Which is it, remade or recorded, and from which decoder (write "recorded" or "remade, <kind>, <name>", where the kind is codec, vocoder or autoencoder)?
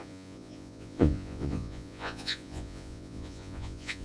remade, vocoder, Vocos